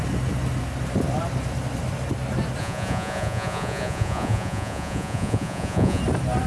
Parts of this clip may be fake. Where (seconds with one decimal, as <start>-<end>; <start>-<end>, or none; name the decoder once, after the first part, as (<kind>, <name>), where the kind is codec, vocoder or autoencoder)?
2.6-6.0 (vocoder, Vocos)